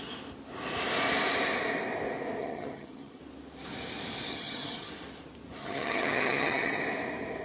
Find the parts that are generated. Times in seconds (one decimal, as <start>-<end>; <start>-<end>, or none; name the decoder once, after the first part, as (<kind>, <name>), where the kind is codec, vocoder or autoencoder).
2.4-3.2 (vocoder, HiFi-GAN); 4.3-4.9; 5.6-6.8